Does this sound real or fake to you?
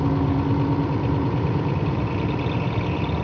fake